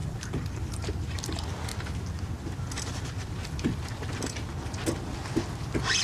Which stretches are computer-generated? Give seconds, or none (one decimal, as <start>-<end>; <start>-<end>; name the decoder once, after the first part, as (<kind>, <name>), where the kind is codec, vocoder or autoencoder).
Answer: 0.0-0.9 (vocoder, BigVGAN v2)